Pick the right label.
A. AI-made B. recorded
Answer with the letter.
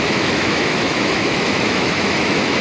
A